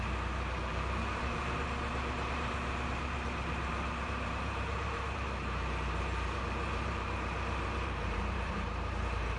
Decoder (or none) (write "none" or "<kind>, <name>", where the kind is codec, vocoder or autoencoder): vocoder, BigVGAN v2